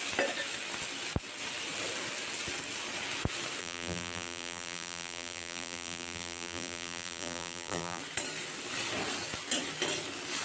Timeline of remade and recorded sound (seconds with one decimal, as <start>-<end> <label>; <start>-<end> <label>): 0.0-3.6 recorded; 3.6-8.0 remade; 8.0-10.4 recorded